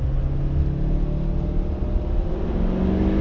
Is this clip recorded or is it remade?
recorded